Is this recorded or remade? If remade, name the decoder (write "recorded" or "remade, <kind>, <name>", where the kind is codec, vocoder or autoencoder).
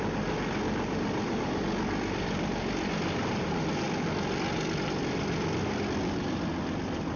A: recorded